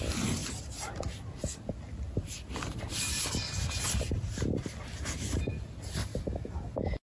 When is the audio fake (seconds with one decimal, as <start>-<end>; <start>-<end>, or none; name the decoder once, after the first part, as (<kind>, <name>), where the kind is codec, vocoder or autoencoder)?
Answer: none